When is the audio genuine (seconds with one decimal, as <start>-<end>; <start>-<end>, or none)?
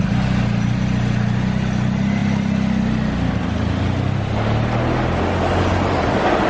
0.0-6.5